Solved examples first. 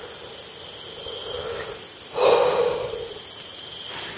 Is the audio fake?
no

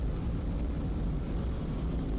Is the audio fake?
yes